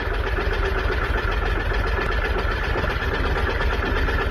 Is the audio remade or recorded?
recorded